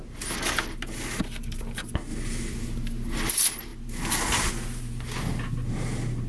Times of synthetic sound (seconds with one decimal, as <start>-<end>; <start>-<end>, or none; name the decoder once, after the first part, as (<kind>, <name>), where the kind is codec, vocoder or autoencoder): none

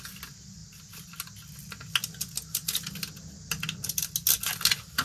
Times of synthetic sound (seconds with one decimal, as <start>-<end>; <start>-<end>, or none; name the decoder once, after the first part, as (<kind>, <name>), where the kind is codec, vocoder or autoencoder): none

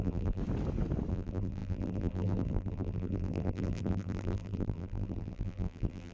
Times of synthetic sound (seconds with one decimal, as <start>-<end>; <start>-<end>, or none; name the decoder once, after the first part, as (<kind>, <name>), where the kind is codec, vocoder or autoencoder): 0.0-0.4 (vocoder, BigVGAN v2); 1.1-6.1